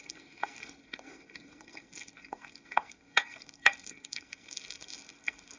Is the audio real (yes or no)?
no